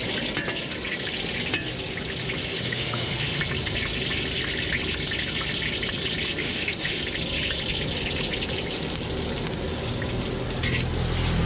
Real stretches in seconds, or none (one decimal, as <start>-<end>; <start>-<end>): 0.0-2.5; 3.4-6.4; 7.0-11.5